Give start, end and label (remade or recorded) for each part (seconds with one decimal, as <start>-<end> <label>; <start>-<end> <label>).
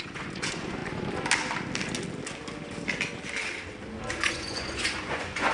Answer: 0.0-0.8 remade; 0.8-4.1 recorded; 4.1-5.5 remade